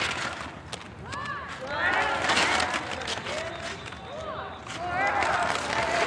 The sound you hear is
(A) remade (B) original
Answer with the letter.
B